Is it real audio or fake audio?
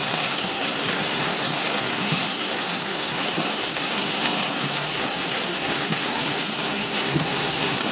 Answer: fake